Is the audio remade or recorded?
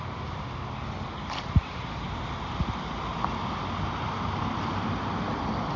recorded